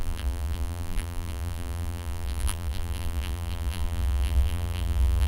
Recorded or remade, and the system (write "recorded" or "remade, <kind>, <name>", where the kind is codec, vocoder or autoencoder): remade, vocoder, BigVGAN v2